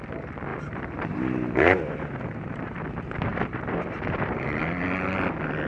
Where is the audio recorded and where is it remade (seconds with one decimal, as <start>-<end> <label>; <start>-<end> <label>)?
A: 0.0-0.5 recorded; 0.5-2.8 remade; 2.8-3.3 recorded; 3.3-4.6 remade; 4.6-5.7 recorded